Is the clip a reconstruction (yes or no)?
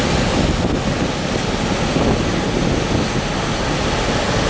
no